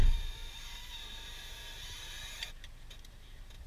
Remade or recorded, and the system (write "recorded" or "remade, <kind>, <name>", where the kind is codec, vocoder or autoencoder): recorded